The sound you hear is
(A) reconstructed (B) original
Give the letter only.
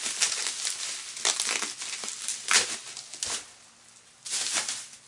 B